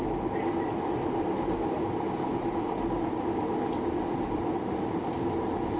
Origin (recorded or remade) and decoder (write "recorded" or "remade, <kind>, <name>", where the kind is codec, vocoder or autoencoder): recorded